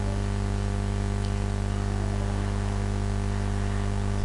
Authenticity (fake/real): real